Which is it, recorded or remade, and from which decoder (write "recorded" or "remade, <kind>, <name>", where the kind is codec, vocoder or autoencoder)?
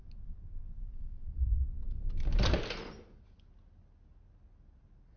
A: recorded